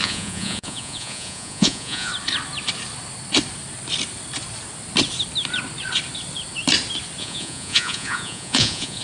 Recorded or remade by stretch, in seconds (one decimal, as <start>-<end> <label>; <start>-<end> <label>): 0.0-2.1 remade; 2.1-7.2 recorded; 7.2-9.0 remade